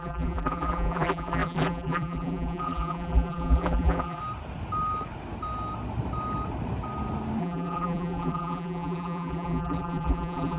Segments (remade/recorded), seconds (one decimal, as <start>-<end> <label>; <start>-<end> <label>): 0.0-4.2 remade; 4.2-7.4 recorded; 7.4-10.6 remade